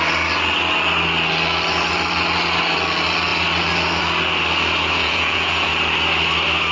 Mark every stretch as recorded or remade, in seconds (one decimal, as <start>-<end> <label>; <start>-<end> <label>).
0.0-5.0 recorded; 5.0-5.7 remade; 5.7-6.7 recorded